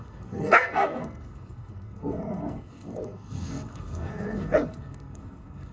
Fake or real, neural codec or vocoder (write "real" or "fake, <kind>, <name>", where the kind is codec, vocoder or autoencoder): fake, codec, SNAC